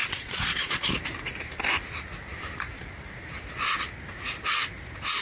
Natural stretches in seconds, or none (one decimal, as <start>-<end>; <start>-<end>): 0.9-5.2

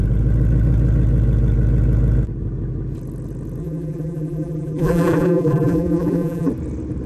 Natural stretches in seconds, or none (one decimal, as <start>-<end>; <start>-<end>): 0.0-3.6; 6.5-7.1